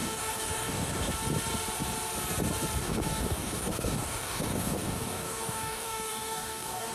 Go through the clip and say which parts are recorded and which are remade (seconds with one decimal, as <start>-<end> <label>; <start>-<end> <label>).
0.0-1.1 remade; 1.1-2.8 recorded; 2.8-6.9 remade